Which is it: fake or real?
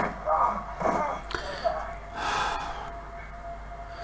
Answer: real